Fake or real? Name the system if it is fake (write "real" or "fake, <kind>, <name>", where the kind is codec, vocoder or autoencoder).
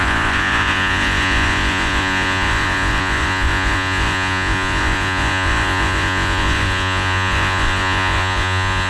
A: fake, vocoder, Vocos